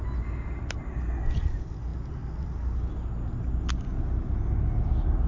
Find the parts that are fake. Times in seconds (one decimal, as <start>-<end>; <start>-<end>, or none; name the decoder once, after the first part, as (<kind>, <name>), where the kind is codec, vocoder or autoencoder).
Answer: none